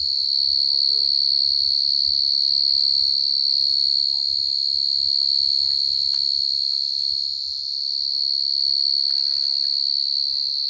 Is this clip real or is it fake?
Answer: real